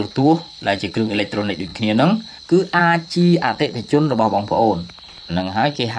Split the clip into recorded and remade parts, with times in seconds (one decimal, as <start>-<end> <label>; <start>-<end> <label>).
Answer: 0.0-1.7 remade; 1.7-2.8 recorded; 2.8-4.3 remade; 4.3-5.1 recorded; 5.1-6.0 remade